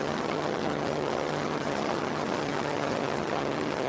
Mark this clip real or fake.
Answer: fake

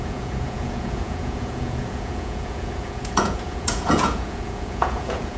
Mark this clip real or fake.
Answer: fake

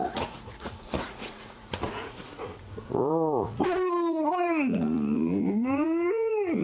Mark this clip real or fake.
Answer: fake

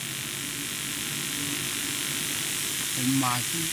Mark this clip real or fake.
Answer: real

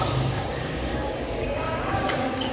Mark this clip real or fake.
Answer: fake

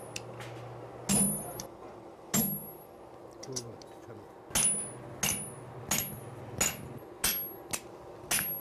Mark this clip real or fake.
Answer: real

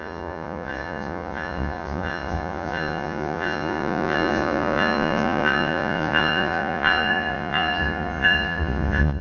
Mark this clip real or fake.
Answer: fake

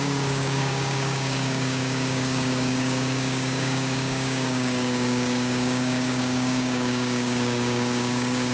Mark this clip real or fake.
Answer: fake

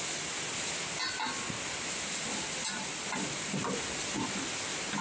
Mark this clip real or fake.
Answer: real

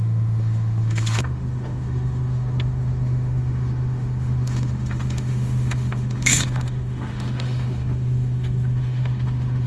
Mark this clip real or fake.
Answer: fake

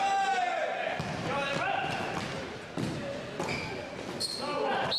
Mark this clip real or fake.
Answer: real